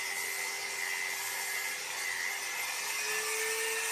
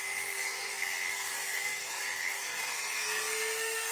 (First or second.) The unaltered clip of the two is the first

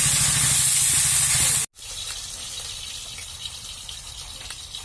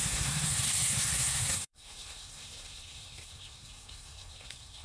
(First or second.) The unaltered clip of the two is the first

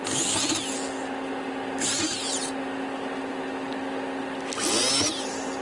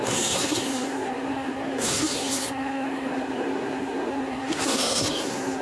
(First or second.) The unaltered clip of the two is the first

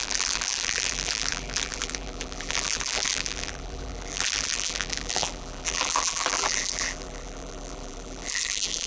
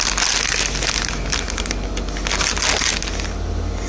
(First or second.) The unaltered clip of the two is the second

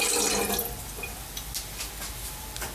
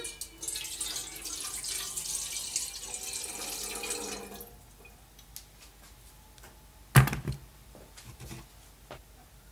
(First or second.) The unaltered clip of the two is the second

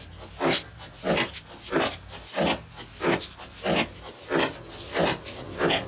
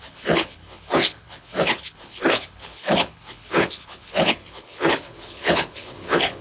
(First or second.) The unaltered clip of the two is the first